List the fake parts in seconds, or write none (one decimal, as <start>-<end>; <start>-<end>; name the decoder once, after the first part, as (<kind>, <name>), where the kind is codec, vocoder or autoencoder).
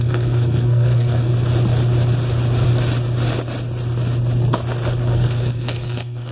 0.0-1.3 (codec, SNAC); 5.1-6.3